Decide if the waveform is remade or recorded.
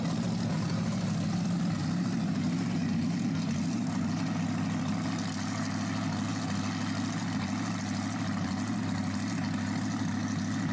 recorded